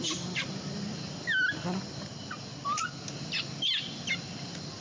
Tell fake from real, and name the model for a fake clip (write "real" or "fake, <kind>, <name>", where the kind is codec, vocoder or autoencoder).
real